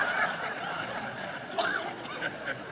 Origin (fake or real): fake